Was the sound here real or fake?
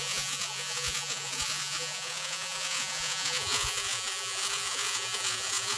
fake